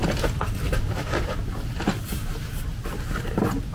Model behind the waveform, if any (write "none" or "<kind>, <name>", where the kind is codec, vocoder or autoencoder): none